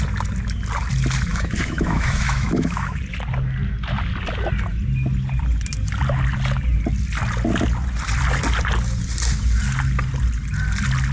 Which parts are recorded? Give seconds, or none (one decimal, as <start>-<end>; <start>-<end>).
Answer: 0.0-1.3; 3.0-11.1